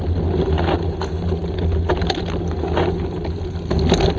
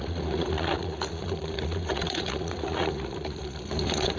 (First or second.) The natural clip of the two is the first